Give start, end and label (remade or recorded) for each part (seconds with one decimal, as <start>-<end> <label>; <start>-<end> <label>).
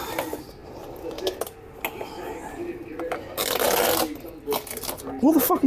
0.0-5.7 recorded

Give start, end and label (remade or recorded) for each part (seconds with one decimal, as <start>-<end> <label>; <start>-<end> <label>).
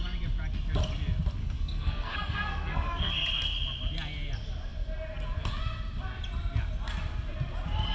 0.0-1.4 recorded; 1.4-3.1 remade; 3.1-7.9 recorded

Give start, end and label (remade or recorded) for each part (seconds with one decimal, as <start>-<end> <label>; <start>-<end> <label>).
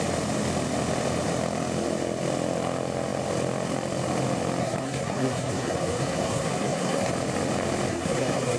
0.0-4.6 recorded; 4.6-7.1 remade; 7.1-7.9 recorded; 7.9-8.6 remade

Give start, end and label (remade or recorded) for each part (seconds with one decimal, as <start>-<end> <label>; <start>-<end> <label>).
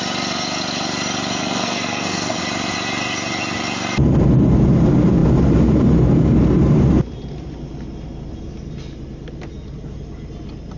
0.0-1.4 recorded; 1.4-2.4 remade; 2.4-10.8 recorded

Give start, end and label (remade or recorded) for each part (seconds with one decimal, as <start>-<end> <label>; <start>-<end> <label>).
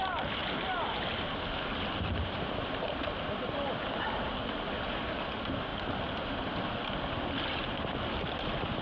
0.0-8.8 recorded